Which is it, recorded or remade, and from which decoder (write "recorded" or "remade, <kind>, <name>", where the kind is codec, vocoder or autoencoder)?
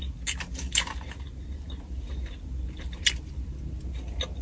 recorded